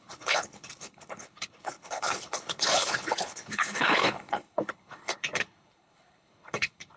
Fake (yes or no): yes